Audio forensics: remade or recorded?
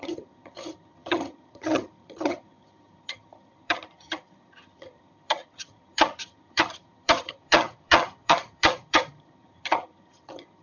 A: remade